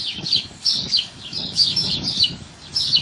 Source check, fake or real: fake